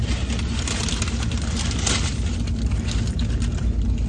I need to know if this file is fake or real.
real